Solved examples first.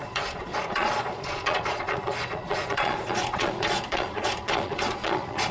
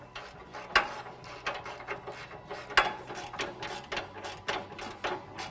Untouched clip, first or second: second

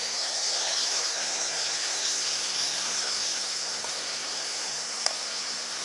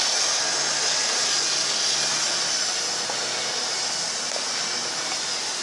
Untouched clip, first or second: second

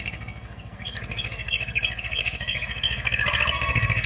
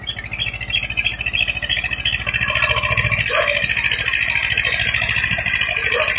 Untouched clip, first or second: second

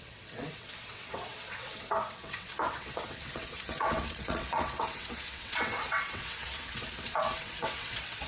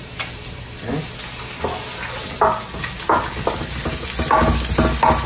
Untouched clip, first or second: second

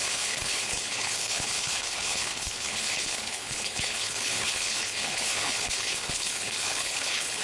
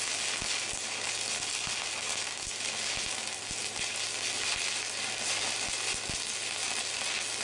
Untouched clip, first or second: second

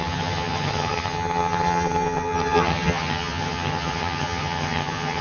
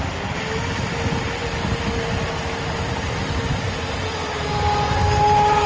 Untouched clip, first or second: second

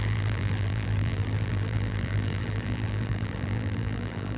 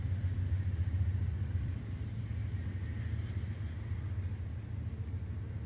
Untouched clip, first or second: second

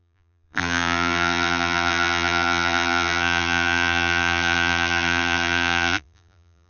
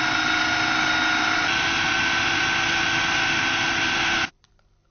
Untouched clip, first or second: second